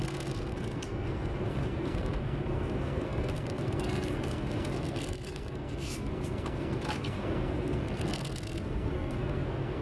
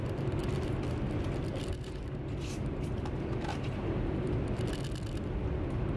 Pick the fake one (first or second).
first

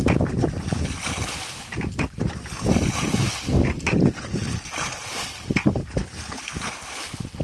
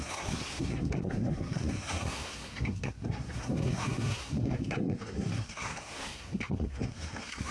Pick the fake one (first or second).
second